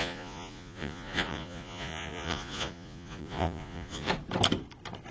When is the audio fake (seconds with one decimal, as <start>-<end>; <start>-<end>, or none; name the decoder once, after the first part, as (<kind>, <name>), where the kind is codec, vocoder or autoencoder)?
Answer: 0.0-4.1 (vocoder, Vocos)